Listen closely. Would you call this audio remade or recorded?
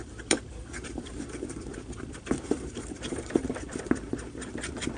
remade